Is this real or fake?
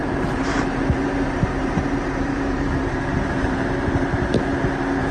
fake